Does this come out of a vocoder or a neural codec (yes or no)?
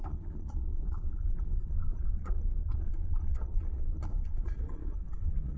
yes